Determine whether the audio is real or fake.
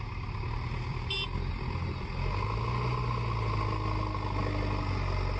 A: real